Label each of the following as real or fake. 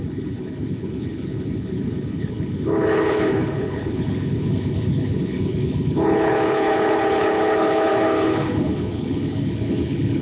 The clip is fake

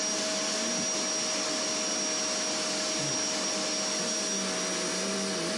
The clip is real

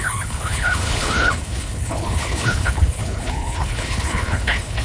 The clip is fake